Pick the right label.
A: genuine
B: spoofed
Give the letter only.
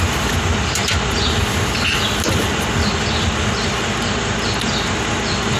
A